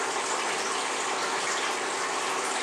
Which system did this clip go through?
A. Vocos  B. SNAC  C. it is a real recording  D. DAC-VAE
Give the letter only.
C